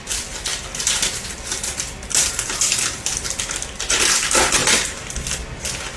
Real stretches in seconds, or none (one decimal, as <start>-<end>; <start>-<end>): 0.0-0.5; 2.3-4.6; 5.1-6.0